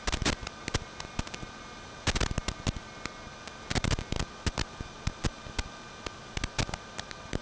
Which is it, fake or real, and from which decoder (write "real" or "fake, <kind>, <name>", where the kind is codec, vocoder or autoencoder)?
real